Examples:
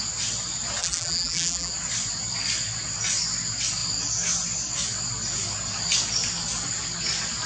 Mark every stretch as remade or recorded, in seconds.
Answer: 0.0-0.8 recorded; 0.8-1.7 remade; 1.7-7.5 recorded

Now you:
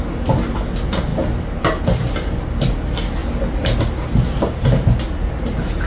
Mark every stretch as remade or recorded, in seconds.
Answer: 0.0-5.9 recorded

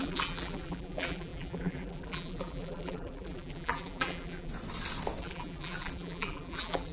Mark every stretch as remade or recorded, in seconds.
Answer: 0.0-4.5 remade; 4.5-5.2 recorded; 5.2-6.9 remade

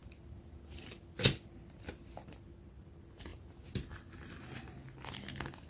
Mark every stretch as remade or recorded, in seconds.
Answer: 0.0-2.6 remade; 2.6-5.7 recorded

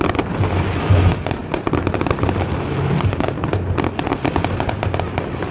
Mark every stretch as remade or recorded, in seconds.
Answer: 0.0-5.5 recorded

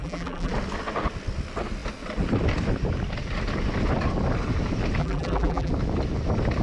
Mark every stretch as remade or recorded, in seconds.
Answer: 0.0-0.5 remade; 0.5-5.0 recorded; 5.0-5.7 remade; 5.7-6.6 recorded

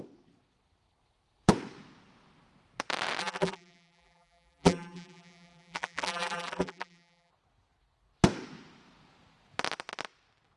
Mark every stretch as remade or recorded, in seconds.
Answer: 0.0-3.2 recorded; 3.2-7.3 remade; 7.3-10.6 recorded